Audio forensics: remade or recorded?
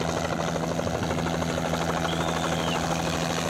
recorded